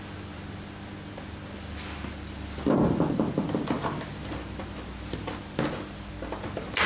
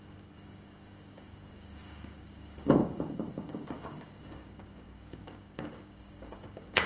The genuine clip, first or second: first